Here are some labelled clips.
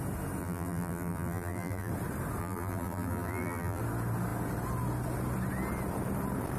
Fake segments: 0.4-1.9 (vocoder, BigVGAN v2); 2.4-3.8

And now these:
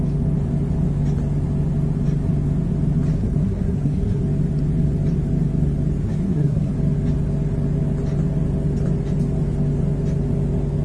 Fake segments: 3.1-4.2 (codec, SNAC); 6.0-6.7

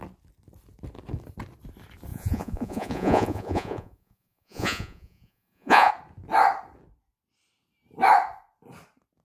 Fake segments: 2.1-5.9 (vocoder, Vocos)

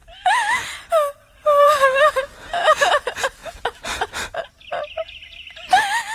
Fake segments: 0.0-0.8 (vocoder, BigVGAN v2); 1.4-2.9

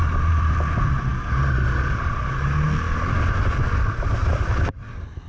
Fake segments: none

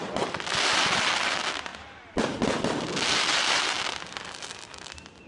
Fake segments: none

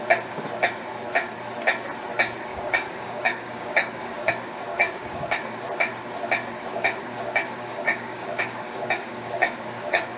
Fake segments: 2.5-4.3 (codec, DAC); 4.7-5.4; 6.7-10.2